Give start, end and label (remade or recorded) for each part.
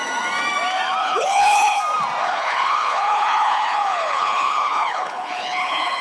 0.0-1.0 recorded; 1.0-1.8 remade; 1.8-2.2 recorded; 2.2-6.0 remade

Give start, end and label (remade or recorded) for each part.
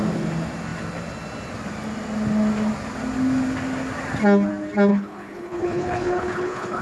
0.0-4.9 recorded; 4.9-6.8 remade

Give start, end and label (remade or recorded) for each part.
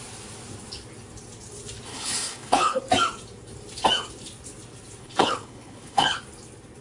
0.0-1.9 recorded; 1.9-2.8 remade; 2.8-5.0 recorded; 5.0-6.2 remade; 6.2-6.8 recorded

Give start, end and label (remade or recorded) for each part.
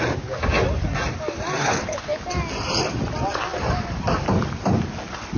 0.0-1.6 recorded; 1.6-2.2 remade; 2.2-5.4 recorded